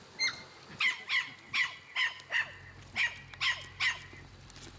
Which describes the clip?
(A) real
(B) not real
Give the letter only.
A